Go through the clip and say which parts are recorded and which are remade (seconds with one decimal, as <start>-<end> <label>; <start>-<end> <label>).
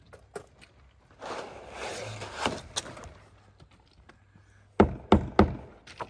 0.0-6.1 recorded